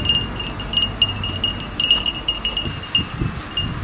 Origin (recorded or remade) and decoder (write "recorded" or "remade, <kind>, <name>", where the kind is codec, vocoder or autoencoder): recorded